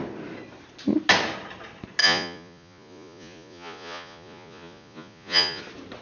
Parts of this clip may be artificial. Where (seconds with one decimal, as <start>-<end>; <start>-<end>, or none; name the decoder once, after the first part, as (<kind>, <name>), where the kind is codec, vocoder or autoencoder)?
2.0-5.6 (vocoder, Vocos)